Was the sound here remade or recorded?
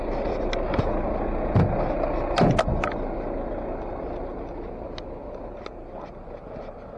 recorded